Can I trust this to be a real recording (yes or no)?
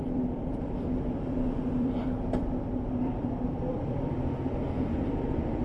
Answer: no